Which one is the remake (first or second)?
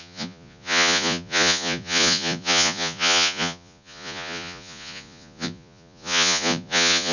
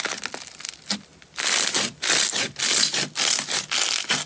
first